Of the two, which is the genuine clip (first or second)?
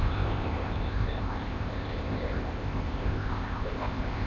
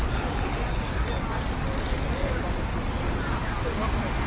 second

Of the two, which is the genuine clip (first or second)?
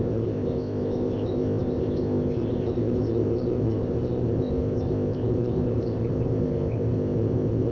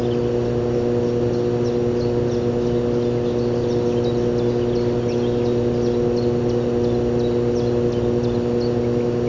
second